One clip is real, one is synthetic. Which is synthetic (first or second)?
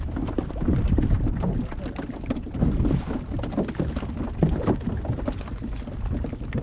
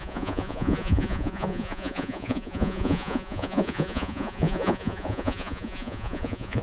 second